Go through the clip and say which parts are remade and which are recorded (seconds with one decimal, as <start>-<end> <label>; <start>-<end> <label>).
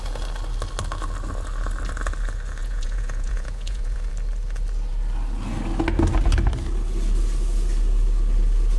0.0-2.6 recorded; 2.6-4.1 remade; 4.1-8.8 recorded